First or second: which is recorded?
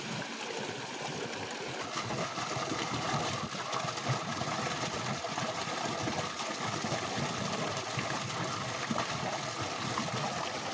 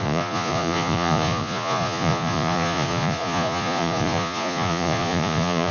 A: first